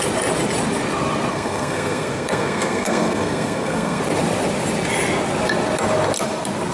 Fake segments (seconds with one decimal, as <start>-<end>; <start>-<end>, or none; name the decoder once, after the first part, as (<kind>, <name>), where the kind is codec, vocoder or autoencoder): 1.3-4.0 (codec, SNAC)